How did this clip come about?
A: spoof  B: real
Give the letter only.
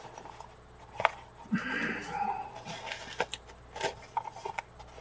B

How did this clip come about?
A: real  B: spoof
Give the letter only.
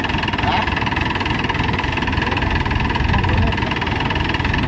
A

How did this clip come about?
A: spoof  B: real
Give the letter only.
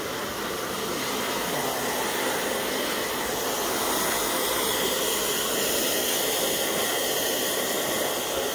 B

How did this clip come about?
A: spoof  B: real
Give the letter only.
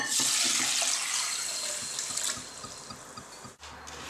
B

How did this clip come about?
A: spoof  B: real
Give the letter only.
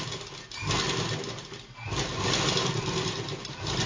B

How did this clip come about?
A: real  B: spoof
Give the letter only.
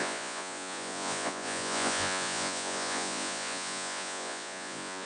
B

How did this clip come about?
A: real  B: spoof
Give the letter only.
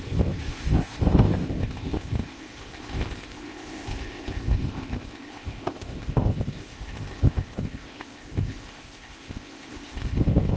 B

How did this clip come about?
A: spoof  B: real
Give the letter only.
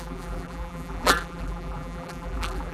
A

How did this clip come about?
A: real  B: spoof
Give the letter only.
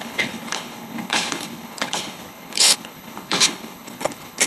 B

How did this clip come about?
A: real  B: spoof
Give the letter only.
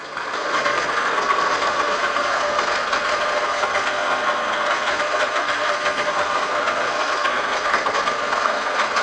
B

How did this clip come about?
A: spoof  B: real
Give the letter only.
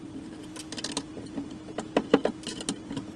B